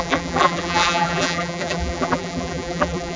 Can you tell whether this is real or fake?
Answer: fake